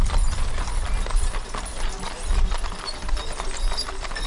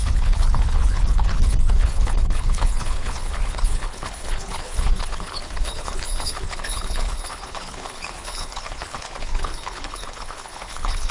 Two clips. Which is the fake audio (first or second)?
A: second